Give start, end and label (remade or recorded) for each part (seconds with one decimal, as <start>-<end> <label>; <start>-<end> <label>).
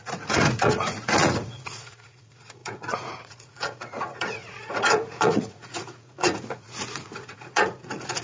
0.0-8.2 remade